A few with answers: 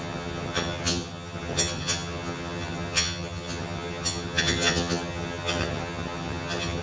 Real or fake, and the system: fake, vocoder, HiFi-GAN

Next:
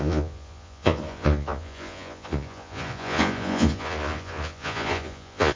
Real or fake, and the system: fake, vocoder, Vocos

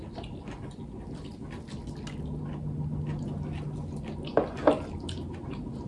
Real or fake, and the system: real